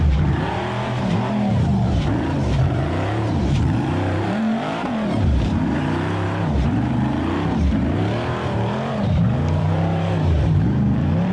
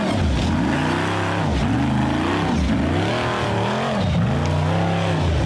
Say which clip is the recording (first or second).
second